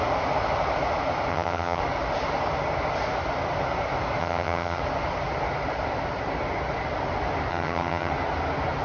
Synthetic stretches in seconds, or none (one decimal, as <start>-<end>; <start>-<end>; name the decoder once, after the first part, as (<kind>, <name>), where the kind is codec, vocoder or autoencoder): 1.3-1.8 (vocoder, HiFi-GAN); 4.2-4.8; 7.5-8.1